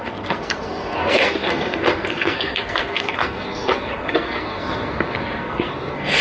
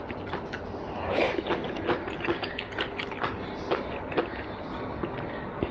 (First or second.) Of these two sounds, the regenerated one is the first